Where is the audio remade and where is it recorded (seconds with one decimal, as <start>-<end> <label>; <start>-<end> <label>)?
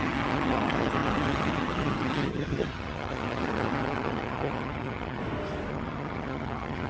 0.0-5.2 remade; 5.2-5.7 recorded; 5.7-6.9 remade